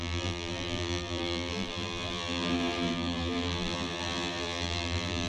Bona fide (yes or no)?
no